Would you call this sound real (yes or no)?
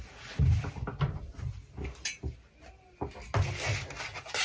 yes